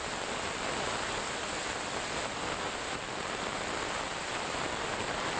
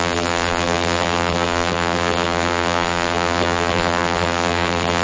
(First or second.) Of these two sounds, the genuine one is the first